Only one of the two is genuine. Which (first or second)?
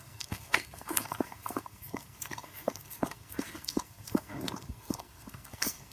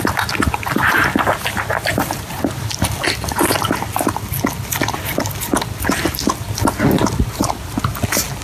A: second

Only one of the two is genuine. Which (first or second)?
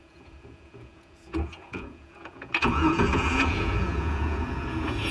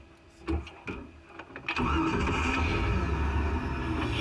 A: second